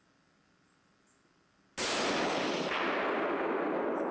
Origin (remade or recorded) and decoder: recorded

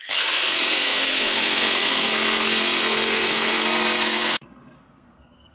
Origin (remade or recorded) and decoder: remade, codec, SNAC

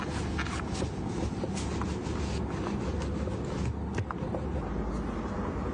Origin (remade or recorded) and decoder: recorded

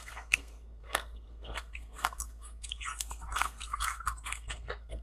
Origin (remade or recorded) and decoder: remade, codec, SNAC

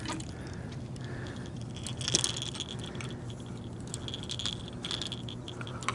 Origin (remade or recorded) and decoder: recorded